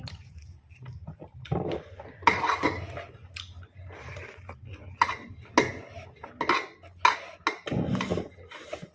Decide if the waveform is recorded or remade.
recorded